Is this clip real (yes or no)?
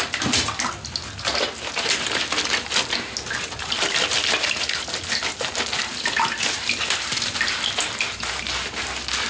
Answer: yes